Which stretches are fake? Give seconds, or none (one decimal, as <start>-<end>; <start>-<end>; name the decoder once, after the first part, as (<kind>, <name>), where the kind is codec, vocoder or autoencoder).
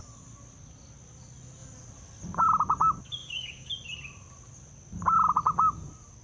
3.2-3.7 (codec, DAC)